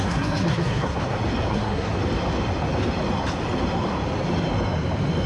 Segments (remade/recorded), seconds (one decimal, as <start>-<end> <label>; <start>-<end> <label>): 0.0-1.0 remade; 1.0-1.5 recorded; 1.5-1.9 remade; 1.9-5.3 recorded